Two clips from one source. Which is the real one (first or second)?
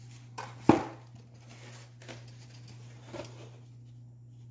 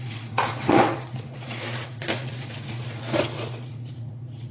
first